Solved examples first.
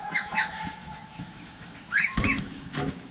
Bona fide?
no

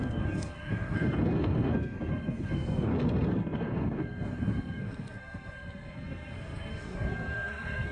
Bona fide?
no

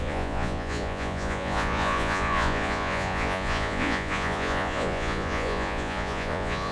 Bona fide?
no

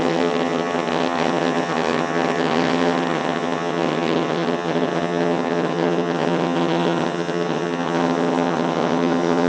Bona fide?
no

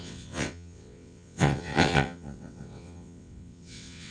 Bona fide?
no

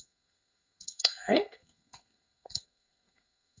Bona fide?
no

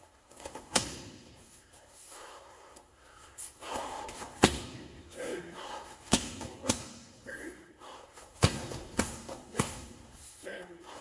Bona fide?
no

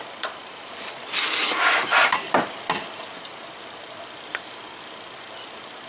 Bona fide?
yes